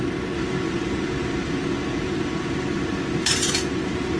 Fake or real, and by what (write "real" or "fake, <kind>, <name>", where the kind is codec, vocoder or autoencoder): real